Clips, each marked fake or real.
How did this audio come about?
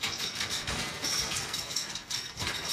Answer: fake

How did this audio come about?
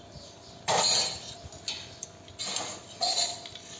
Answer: real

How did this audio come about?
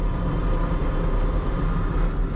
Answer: real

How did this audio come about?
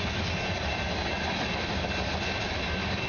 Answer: real